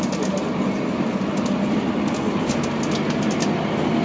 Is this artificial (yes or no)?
no